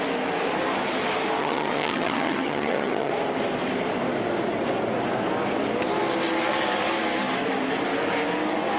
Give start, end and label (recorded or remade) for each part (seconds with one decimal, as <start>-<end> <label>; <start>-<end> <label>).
0.0-1.4 recorded; 1.4-3.1 remade; 3.1-8.8 recorded